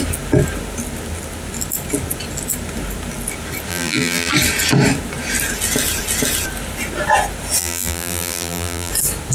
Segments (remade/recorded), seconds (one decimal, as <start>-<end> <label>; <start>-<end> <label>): 0.0-3.7 recorded; 3.7-4.3 remade; 4.3-7.6 recorded; 7.6-8.9 remade; 8.9-9.3 recorded

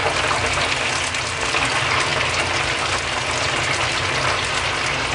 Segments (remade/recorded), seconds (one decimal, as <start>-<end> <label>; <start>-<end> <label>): 0.0-5.1 recorded